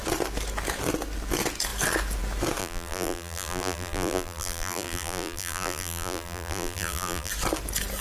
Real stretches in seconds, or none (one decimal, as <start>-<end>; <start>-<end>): 0.0-2.6; 7.3-8.0